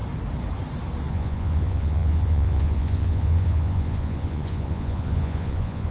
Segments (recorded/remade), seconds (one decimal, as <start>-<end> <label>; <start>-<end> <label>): 0.0-1.1 recorded; 1.1-5.9 remade